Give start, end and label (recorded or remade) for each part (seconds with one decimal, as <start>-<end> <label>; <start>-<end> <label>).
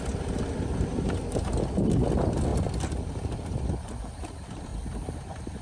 0.0-5.6 recorded